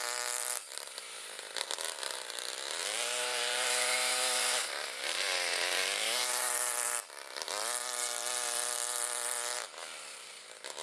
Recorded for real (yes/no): no